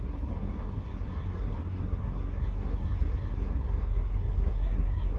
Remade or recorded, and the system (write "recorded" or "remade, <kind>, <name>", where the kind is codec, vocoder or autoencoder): remade, codec, SNAC